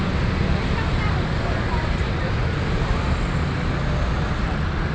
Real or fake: real